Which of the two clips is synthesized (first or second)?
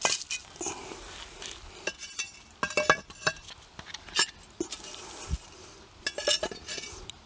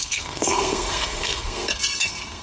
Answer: second